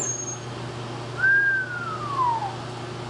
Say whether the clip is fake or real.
real